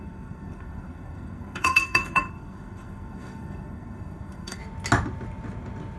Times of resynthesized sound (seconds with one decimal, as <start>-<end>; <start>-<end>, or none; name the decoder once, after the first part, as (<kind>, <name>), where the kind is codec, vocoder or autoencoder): 0.0-4.6 (codec, SNAC)